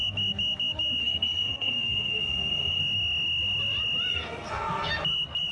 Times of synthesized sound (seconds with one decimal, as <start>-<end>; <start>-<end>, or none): 1.0-2.8; 4.1-4.9